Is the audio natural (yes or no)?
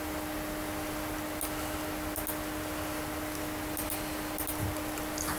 yes